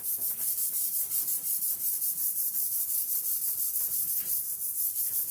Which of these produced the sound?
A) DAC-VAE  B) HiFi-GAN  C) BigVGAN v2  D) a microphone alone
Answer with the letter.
D